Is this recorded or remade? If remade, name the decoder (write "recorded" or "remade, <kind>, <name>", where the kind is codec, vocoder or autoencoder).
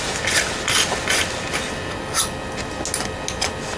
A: recorded